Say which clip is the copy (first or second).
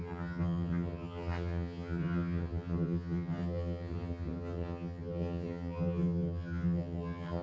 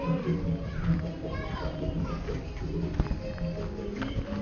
first